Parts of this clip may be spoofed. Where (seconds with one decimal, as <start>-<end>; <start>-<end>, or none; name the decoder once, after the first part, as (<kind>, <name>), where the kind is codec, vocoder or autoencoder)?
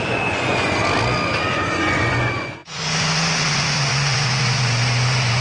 0.0-0.8 (vocoder, Vocos); 1.4-5.4